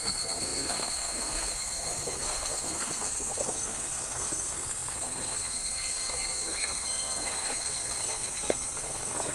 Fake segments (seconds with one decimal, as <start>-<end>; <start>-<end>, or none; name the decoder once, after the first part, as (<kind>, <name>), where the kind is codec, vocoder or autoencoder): 0.0-9.3 (codec, SNAC)